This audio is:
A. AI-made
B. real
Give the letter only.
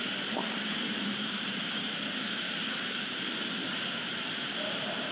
A